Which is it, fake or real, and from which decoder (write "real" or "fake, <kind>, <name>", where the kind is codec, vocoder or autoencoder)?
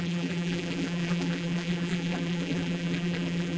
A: fake, vocoder, BigVGAN v2